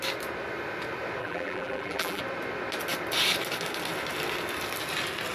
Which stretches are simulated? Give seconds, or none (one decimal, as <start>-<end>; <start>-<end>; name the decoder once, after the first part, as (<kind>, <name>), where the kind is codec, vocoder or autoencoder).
1.2-2.2 (vocoder, BigVGAN v2)